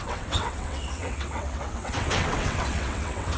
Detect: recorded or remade remade